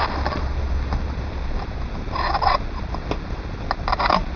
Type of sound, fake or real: real